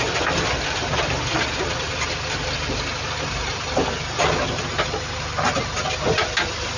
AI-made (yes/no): no